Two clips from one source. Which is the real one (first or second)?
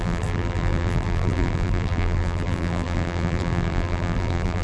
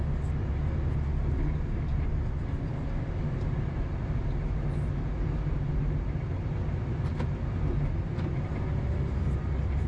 second